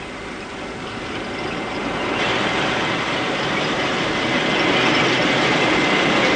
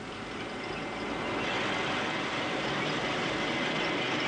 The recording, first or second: second